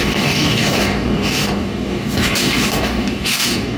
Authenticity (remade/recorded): remade